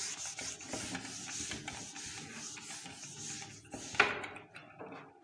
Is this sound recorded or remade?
recorded